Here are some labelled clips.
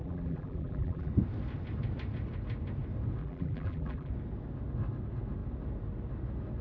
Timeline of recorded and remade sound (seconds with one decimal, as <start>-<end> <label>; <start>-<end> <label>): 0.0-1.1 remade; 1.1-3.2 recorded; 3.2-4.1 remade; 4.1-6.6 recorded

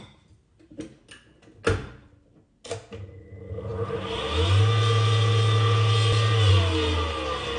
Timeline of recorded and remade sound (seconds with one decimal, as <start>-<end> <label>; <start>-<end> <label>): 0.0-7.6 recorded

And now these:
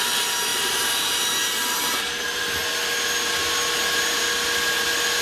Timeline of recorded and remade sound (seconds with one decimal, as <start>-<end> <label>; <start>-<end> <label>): 0.0-0.5 recorded; 0.5-2.6 remade; 2.6-5.2 recorded

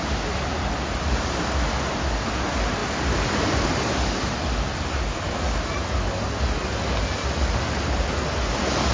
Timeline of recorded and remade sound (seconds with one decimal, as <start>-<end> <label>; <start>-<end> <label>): 0.0-2.8 recorded; 2.8-3.8 remade; 3.8-8.9 recorded

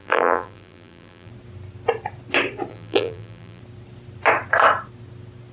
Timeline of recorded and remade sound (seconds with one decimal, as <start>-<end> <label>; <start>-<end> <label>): 0.0-1.3 remade; 1.3-2.7 recorded; 2.7-3.6 remade; 3.6-5.5 recorded

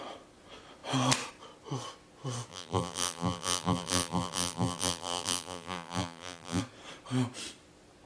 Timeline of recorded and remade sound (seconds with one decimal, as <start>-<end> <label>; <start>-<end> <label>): 0.0-2.5 recorded; 2.5-6.6 remade; 6.6-8.1 recorded

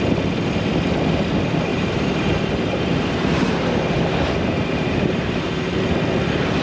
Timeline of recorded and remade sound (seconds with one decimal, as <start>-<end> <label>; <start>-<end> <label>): 0.0-1.7 recorded; 1.7-5.7 remade; 5.7-6.6 recorded